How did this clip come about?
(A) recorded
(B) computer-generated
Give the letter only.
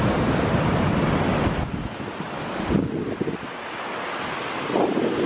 A